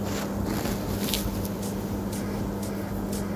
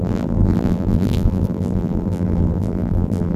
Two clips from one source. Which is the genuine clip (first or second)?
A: first